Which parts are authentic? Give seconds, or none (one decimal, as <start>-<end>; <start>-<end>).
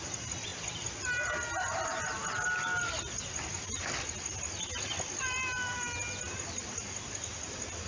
0.0-7.9